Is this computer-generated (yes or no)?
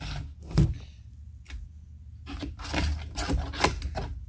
no